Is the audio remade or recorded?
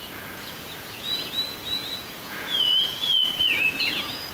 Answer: remade